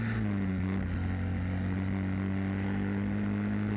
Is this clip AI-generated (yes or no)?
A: no